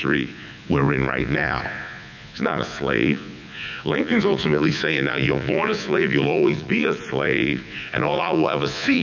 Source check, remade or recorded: remade